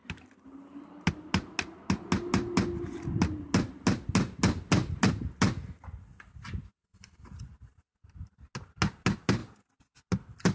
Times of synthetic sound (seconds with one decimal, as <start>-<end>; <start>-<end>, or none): none